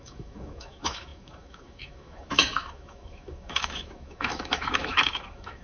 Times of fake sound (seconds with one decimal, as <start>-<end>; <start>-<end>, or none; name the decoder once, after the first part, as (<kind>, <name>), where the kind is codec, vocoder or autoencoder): 0.0-5.6 (autoencoder, DAC-VAE)